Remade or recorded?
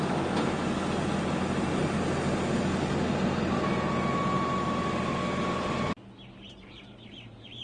recorded